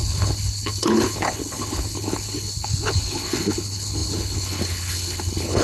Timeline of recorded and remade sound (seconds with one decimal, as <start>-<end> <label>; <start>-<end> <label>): 0.0-5.6 remade